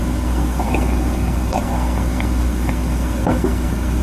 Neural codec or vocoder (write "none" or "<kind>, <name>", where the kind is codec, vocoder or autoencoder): codec, SNAC